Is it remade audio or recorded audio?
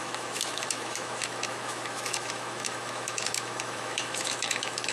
remade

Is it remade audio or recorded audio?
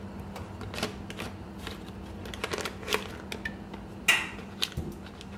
recorded